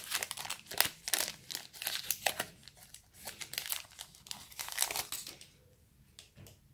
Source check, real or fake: real